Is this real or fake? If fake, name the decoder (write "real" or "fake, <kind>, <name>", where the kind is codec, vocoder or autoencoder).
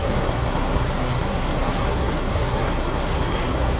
fake, codec, SNAC